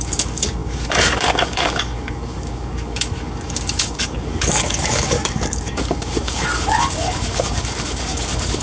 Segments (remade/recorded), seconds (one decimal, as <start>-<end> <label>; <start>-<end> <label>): 0.0-8.6 remade